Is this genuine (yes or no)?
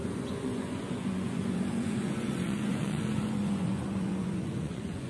no